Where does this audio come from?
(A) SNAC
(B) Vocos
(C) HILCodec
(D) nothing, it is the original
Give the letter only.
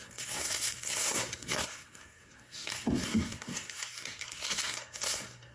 A